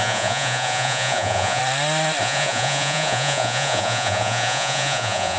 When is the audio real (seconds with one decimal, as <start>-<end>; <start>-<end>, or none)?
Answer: 1.6-2.2